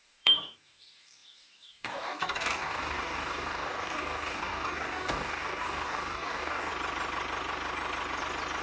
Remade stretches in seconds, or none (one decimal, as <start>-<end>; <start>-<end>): 0.0-6.7